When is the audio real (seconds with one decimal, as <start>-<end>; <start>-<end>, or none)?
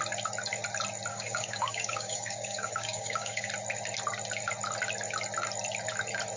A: 0.0-1.1; 3.5-6.4